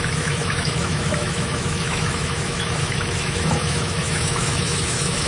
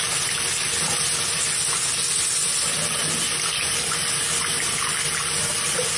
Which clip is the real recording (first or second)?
second